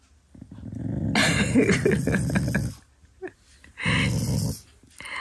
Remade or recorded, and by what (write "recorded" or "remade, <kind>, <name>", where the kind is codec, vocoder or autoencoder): recorded